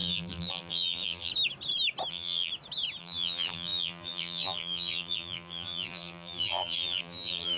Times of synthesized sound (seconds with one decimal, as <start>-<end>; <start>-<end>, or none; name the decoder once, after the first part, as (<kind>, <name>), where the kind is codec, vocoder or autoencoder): 0.0-1.3 (vocoder, BigVGAN v2); 2.1-2.5; 3.0-7.6